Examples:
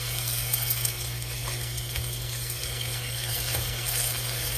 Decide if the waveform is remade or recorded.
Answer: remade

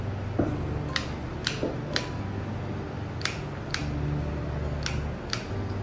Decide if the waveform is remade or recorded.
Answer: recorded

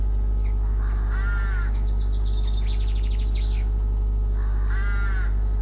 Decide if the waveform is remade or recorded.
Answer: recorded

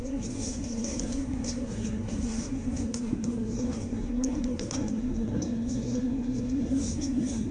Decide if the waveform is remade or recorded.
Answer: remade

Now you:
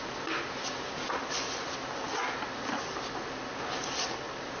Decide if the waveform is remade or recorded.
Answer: recorded